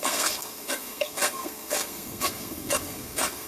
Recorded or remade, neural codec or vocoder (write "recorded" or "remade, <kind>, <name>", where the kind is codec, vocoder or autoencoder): remade, codec, SNAC